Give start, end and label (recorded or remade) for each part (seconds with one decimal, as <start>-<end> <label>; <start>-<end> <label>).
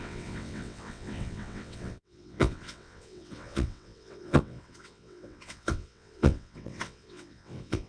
0.0-7.9 remade